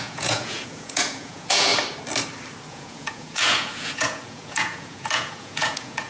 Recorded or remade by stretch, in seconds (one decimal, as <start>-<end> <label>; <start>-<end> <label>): 0.0-1.7 remade; 1.7-2.7 recorded; 2.7-6.1 remade

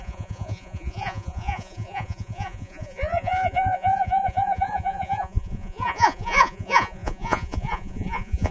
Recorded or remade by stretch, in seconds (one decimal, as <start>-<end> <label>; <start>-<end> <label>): 0.0-8.5 remade

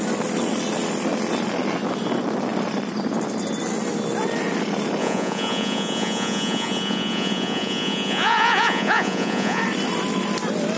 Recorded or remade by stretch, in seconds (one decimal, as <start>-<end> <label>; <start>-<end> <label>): 0.0-5.0 recorded; 5.0-9.6 remade; 9.6-10.8 recorded

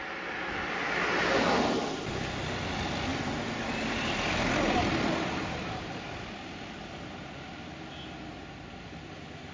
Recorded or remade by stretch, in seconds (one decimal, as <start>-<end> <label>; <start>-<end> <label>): 0.0-9.5 recorded

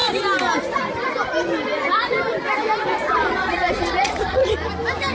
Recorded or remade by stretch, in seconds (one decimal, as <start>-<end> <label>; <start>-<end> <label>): 0.0-3.0 recorded; 3.0-4.5 remade; 4.5-5.1 recorded

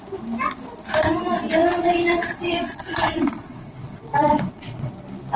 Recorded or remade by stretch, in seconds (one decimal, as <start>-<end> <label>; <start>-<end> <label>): 0.0-1.7 recorded; 1.7-4.9 remade; 4.9-5.4 recorded

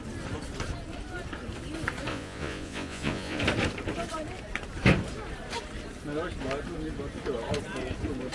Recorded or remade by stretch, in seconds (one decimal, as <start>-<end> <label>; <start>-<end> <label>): 0.0-2.1 recorded; 2.1-3.4 remade; 3.4-8.3 recorded

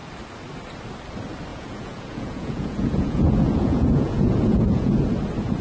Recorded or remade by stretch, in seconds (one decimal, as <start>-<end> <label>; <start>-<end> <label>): 0.0-1.5 recorded; 1.5-4.9 remade; 4.9-5.6 recorded